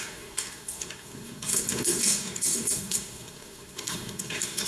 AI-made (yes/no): yes